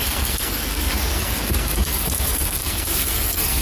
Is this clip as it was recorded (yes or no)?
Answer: no